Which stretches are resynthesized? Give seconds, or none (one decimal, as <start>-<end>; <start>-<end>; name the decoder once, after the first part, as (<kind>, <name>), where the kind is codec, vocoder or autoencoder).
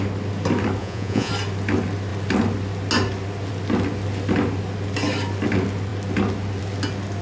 0.8-1.3 (vocoder, Vocos)